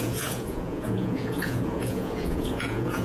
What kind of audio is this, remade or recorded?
remade